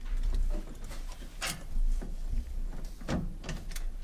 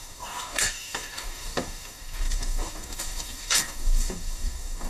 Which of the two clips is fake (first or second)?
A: second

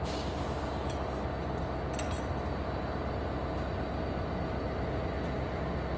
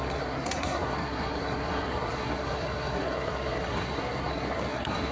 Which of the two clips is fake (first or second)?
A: second